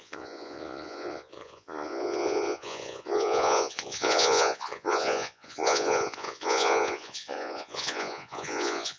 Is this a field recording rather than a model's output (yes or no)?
no